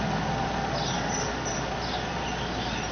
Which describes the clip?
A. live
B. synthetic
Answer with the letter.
A